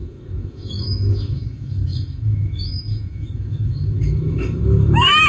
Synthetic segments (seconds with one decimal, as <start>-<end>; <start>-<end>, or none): 0.0-5.3